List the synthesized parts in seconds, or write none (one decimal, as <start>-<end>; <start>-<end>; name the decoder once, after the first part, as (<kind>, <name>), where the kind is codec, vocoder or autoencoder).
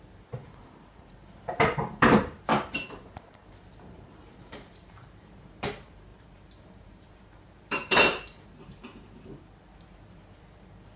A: 0.0-2.5 (vocoder, BigVGAN v2); 3.0-11.0